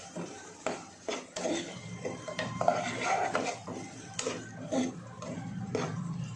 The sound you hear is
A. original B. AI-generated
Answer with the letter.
B